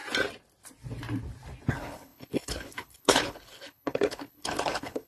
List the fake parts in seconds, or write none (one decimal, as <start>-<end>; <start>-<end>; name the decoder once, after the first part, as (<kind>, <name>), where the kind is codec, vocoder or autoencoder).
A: 1.7-5.1 (codec, HILCodec)